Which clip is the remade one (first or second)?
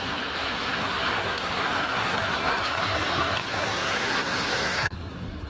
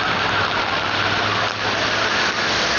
first